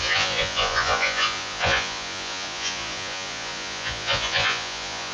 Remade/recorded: remade